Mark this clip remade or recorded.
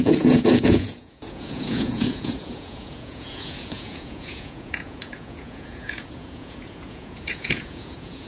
remade